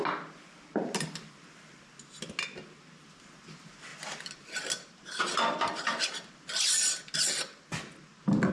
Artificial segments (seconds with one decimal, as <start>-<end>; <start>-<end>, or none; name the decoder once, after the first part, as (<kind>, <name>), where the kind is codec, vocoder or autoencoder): none